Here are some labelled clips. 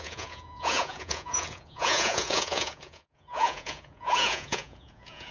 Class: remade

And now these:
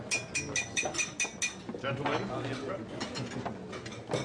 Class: recorded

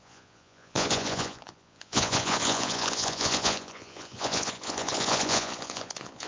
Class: remade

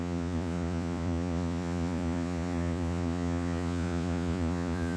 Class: remade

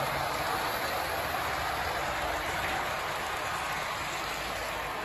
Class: recorded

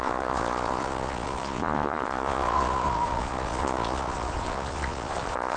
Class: remade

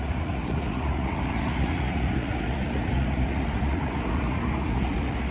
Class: remade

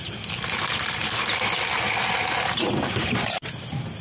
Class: recorded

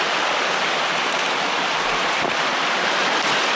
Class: recorded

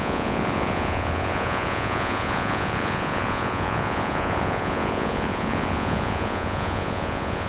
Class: remade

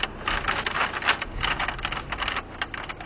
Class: recorded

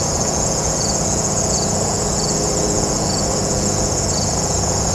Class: remade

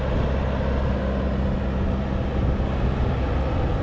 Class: recorded